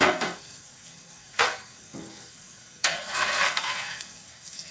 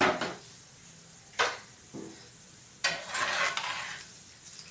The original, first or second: second